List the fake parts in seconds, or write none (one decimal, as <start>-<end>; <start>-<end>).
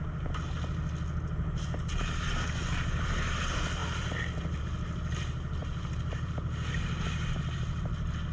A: 5.6-6.3